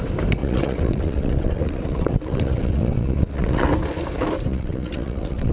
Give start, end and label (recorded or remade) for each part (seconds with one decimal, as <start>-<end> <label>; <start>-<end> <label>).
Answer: 0.0-0.4 recorded; 0.4-3.7 remade; 3.7-4.5 recorded; 4.5-5.5 remade